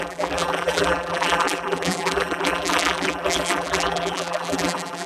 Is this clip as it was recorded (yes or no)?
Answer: no